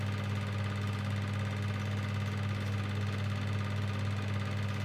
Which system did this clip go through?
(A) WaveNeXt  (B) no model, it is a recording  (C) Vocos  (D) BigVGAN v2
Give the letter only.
B